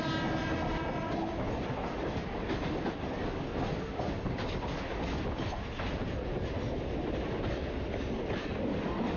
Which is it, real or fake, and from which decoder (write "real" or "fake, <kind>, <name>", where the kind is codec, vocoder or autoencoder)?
real